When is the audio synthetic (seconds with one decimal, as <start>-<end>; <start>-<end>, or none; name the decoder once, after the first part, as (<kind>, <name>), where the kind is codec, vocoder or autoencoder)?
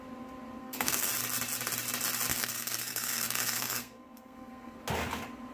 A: 0.6-1.1 (codec, SNAC); 2.3-4.8